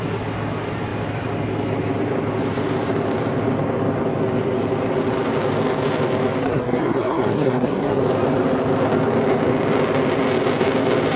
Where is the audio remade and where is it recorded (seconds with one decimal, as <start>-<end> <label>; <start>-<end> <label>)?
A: 0.0-6.4 recorded; 6.4-8.0 remade; 8.0-11.2 recorded